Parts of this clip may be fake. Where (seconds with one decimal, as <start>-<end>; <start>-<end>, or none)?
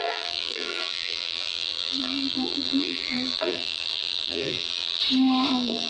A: 0.0-5.0; 5.5-5.9